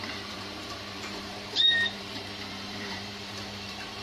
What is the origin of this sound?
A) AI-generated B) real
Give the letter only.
A